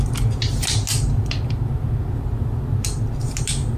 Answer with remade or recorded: recorded